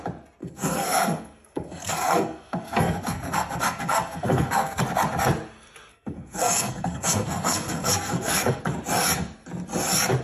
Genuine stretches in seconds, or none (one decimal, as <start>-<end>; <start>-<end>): 0.0-0.4; 4.8-5.9; 8.6-10.2